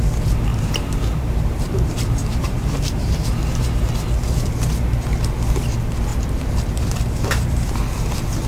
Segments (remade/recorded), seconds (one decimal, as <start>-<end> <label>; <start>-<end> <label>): 0.0-0.5 recorded; 0.5-3.9 remade; 3.9-6.1 recorded; 6.1-7.7 remade; 7.7-8.5 recorded

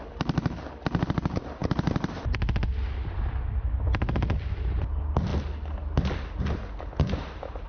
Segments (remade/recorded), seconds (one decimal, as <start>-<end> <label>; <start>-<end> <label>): 0.0-5.3 remade; 5.3-6.4 recorded; 6.4-7.7 remade